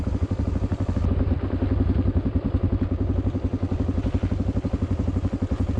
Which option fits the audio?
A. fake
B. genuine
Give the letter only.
B